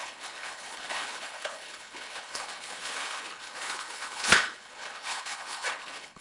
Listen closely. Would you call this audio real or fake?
fake